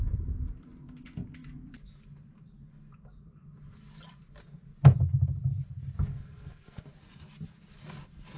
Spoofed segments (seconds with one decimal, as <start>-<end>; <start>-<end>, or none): 6.1-6.8